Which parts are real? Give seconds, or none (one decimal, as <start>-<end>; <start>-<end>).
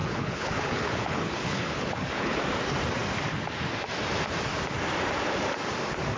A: 2.4-6.2